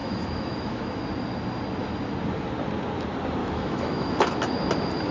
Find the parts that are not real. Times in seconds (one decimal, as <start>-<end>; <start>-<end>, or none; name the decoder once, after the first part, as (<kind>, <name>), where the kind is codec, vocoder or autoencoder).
0.0-1.0 (autoencoder, DAC-VAE); 3.4-4.1